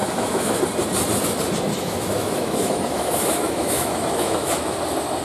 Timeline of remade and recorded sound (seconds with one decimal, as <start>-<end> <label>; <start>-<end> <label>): 0.0-0.6 remade; 0.6-1.7 recorded; 1.7-4.8 remade; 4.8-5.2 recorded